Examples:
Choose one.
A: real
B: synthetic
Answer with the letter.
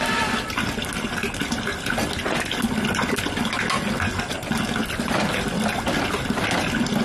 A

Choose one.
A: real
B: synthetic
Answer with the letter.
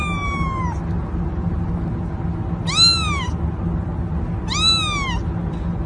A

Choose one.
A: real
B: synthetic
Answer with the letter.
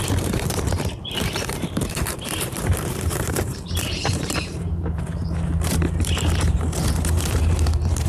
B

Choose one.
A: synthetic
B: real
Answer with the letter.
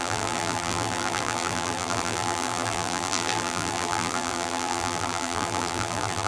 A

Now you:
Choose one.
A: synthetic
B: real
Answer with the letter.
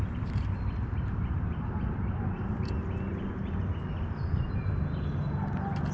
B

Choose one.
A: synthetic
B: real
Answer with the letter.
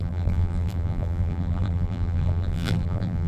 A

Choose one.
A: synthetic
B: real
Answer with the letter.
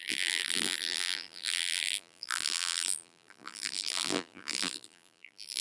A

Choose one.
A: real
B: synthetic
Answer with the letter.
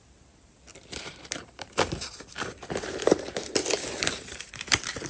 B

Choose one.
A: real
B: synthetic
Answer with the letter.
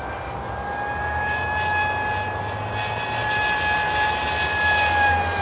A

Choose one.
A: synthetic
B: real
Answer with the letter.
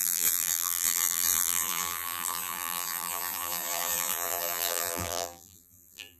A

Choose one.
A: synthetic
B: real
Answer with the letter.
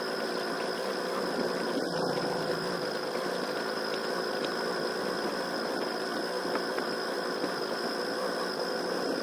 B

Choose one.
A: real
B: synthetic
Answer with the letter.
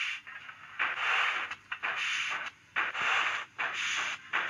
A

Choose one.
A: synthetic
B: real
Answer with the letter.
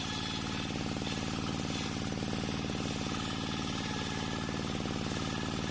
B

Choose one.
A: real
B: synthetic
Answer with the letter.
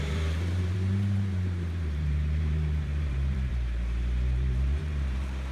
B